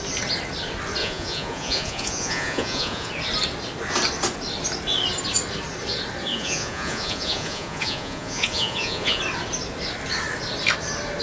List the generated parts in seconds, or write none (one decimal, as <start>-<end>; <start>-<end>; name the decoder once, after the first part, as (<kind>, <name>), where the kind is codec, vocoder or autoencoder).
1.0-3.1 (vocoder, Vocos); 6.3-9.2